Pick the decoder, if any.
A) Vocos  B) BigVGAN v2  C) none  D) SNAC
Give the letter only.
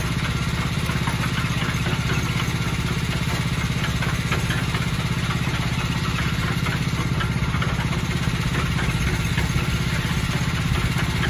C